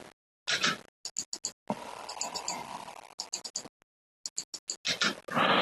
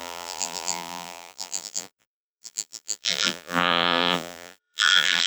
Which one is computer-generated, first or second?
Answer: second